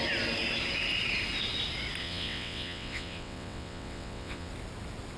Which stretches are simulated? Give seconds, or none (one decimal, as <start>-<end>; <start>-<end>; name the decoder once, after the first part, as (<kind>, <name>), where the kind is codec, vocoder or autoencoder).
2.0-4.5 (vocoder, WaveNeXt)